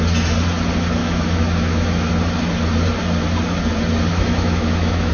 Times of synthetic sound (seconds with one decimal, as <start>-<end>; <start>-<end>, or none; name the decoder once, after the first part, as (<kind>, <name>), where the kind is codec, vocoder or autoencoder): 1.0-2.1 (autoencoder, DAC-VAE); 4.1-5.1